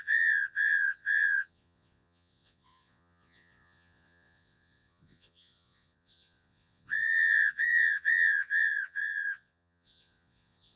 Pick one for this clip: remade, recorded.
remade